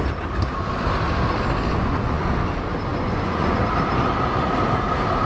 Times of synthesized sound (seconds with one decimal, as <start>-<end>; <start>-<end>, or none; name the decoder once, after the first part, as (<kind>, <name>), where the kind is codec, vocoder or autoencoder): 1.7-2.3 (vocoder, Vocos); 2.9-3.6